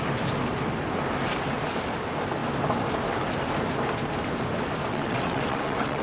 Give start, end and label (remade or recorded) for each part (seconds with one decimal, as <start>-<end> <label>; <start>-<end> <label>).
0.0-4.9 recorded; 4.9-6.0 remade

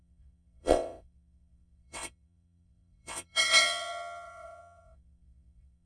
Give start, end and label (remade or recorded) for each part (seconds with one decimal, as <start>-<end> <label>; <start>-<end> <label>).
0.0-5.9 remade

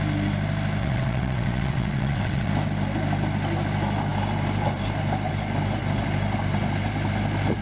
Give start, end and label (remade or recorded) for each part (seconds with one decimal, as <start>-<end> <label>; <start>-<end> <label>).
0.0-0.8 recorded; 0.8-2.5 remade; 2.5-7.6 recorded

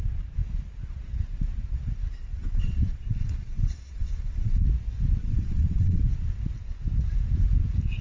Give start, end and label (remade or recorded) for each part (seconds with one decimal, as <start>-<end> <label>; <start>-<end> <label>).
0.0-2.2 recorded; 2.2-4.6 remade; 4.6-5.2 recorded; 5.2-6.0 remade; 6.0-8.0 recorded

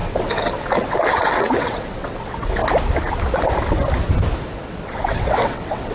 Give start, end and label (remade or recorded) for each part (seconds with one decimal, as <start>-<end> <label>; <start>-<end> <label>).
0.0-2.6 remade; 2.6-4.5 recorded; 4.5-5.9 remade

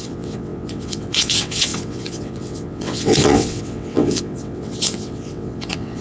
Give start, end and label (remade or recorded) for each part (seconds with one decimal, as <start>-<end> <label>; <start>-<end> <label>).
0.0-6.0 remade

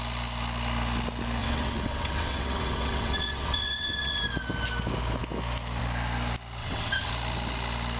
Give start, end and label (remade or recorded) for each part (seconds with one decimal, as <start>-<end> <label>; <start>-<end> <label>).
0.0-1.4 recorded; 1.4-4.2 remade; 4.2-6.6 recorded; 6.6-7.1 remade; 7.1-8.0 recorded

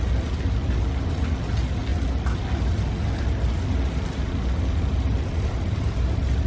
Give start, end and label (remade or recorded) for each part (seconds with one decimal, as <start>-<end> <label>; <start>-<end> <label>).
0.0-6.5 recorded